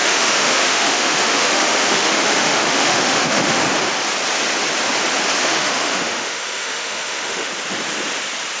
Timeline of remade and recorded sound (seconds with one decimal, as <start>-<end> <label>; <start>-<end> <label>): 0.0-3.6 remade; 3.6-5.4 recorded; 5.4-7.5 remade; 7.5-8.6 recorded